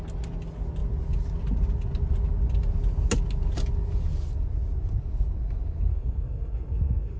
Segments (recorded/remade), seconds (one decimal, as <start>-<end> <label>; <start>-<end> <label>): 0.0-5.9 recorded; 5.9-7.2 remade